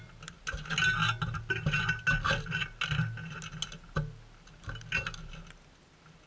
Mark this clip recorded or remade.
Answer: recorded